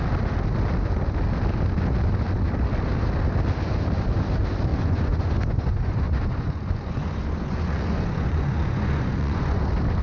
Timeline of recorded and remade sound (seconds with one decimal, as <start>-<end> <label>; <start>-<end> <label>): 0.0-4.7 recorded; 4.7-9.6 remade; 9.6-10.0 recorded